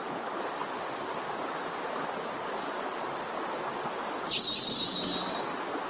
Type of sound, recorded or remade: recorded